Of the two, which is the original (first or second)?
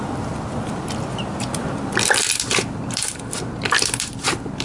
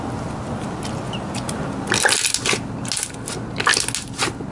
second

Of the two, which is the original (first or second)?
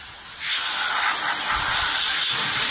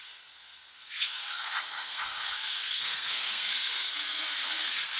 first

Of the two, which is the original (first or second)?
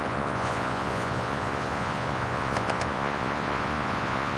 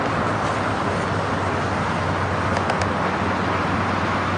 second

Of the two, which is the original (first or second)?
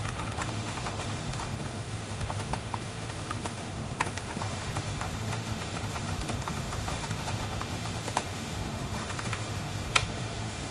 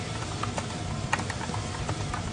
second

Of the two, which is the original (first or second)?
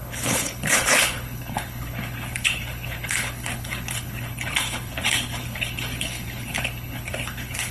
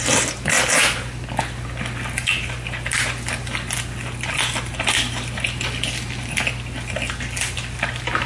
second